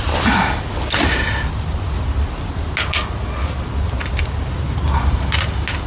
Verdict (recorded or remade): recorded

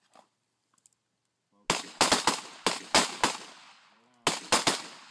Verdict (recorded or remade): recorded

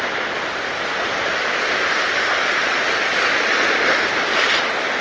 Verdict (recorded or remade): recorded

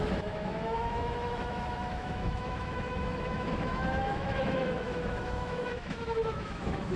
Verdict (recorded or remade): remade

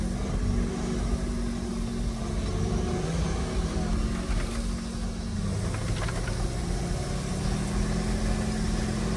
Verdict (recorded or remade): recorded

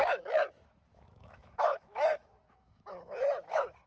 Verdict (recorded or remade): remade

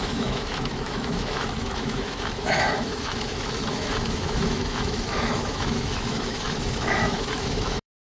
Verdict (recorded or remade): remade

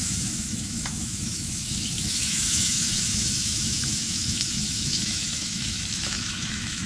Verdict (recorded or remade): remade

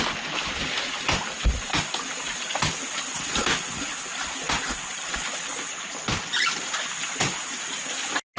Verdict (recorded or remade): recorded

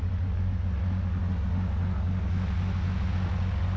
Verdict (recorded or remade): recorded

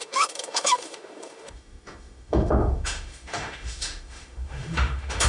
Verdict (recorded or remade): remade